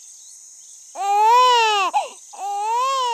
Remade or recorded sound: recorded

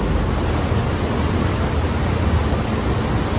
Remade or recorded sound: recorded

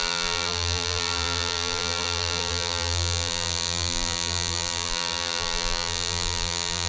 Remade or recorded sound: remade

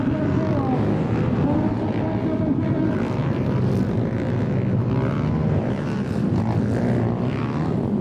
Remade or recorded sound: recorded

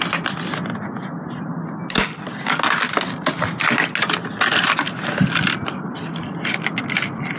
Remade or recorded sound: recorded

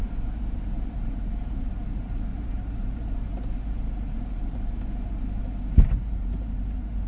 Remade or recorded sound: remade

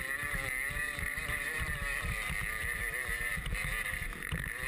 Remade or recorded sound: remade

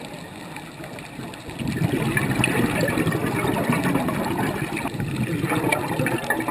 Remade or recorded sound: recorded